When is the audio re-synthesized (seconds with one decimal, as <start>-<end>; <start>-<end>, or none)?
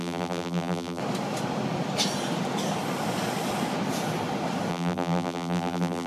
0.0-1.0; 4.7-6.1